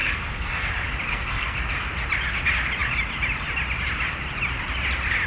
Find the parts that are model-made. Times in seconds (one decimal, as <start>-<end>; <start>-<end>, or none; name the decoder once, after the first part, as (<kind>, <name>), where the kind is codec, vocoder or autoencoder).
0.0-0.7 (codec, SNAC); 1.1-1.7